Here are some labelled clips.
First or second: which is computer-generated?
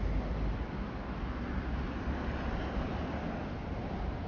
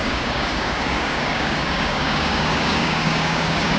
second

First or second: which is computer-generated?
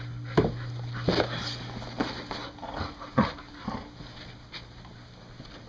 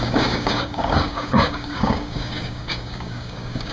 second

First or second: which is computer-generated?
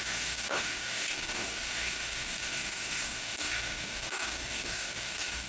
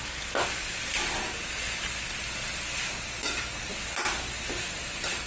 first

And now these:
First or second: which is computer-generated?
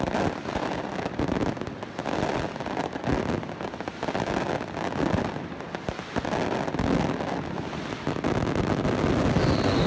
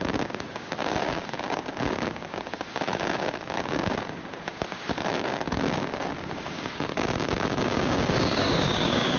second